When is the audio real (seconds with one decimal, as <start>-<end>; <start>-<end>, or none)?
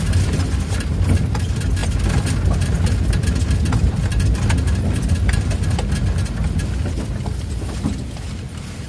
0.0-8.9